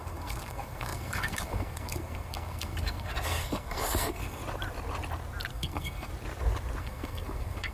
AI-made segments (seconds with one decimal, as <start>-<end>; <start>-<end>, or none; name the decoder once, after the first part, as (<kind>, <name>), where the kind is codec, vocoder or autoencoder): 0.0-4.4 (codec, SNAC); 5.5-6.1; 6.8-7.7

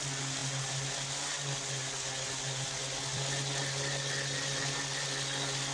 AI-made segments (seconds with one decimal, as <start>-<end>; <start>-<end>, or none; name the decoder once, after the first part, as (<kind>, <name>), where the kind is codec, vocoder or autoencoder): none

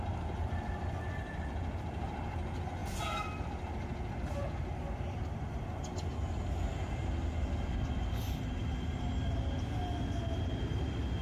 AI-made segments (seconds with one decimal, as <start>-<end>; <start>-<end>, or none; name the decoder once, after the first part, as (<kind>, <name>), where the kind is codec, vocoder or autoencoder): none

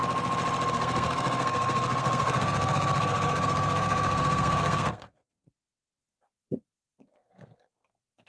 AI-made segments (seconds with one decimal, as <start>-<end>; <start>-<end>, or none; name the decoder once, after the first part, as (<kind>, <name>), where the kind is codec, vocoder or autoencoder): 0.7-8.3 (codec, SNAC)

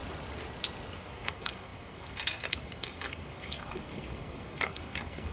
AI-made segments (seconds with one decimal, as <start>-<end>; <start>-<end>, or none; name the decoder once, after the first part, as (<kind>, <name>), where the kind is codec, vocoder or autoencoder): 1.0-5.3 (codec, SNAC)

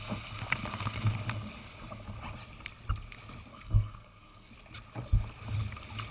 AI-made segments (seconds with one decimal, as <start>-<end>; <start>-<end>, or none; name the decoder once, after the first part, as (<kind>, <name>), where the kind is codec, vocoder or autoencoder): 3.5-4.5 (codec, SNAC)